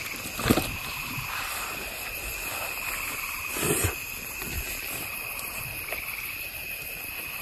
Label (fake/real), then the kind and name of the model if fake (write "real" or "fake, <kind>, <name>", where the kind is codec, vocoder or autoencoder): real